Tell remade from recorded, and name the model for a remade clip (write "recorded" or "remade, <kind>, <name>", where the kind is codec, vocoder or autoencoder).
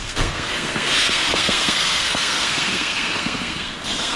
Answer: remade, codec, SNAC